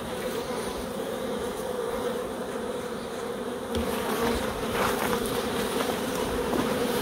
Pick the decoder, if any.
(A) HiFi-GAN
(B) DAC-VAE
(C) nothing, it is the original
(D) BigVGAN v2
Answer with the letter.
D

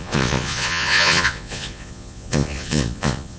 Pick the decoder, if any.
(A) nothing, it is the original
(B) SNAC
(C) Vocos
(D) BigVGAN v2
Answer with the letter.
C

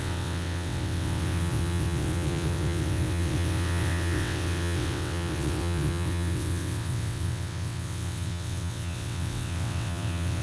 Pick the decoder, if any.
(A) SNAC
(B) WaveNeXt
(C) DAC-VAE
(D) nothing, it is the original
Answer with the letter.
B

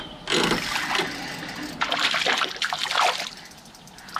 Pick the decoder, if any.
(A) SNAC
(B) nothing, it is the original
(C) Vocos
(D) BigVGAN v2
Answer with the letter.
B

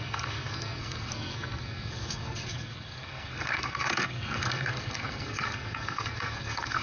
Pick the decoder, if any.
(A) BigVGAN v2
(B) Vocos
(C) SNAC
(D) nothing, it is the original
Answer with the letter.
C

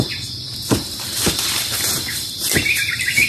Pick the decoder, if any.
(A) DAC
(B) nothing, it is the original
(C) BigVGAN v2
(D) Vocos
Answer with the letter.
C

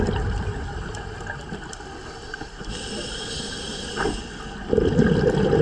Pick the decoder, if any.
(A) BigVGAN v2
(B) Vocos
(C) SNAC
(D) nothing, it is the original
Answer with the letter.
D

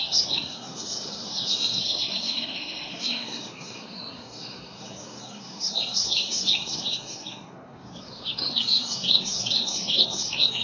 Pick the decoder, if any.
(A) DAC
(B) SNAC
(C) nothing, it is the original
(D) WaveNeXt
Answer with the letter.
B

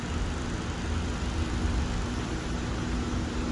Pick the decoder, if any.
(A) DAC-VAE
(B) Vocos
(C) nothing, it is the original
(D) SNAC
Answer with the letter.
C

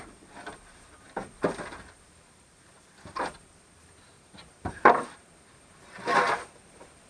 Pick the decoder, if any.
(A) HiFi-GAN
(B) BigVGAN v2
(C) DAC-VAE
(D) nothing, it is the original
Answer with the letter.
B